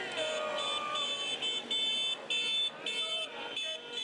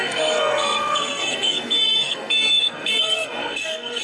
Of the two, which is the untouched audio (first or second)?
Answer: first